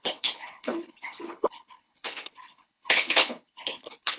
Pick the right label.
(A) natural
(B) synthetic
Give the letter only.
B